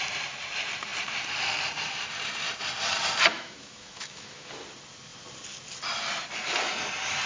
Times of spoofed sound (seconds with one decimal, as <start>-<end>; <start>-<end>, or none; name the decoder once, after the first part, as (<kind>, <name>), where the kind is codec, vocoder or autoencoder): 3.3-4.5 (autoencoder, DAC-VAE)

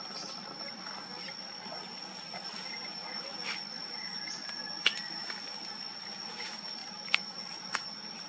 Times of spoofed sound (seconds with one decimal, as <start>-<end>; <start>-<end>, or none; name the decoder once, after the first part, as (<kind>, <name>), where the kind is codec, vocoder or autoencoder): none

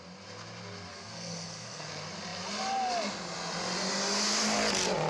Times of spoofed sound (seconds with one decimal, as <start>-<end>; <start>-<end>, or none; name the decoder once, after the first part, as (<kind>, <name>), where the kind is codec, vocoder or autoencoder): 0.9-1.9 (codec, SNAC)

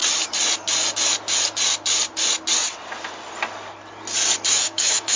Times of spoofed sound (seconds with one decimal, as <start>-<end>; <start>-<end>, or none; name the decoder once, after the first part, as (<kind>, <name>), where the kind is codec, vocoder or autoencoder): 4.5-5.2 (autoencoder, DAC-VAE)

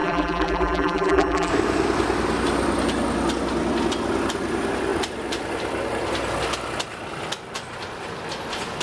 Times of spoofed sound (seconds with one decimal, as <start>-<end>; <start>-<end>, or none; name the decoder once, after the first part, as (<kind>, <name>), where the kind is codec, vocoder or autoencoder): 0.0-1.5 (vocoder, BigVGAN v2)

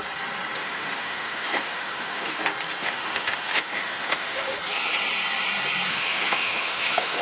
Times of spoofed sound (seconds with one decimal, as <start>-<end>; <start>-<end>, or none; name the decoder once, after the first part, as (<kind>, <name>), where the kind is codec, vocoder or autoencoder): 0.6-2.4 (autoencoder, DAC-VAE); 2.8-4.6; 5.9-7.2